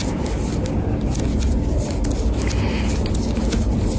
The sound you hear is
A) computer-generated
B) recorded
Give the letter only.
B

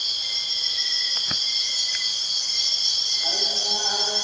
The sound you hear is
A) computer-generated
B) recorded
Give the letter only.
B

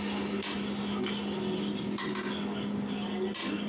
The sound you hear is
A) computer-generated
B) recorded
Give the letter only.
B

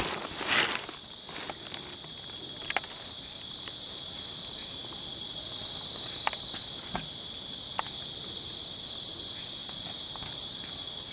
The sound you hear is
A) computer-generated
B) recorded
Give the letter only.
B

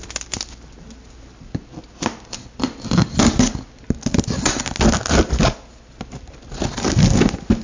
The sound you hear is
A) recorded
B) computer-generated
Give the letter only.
A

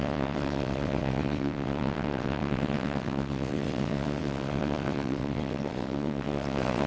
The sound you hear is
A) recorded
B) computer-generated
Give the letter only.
B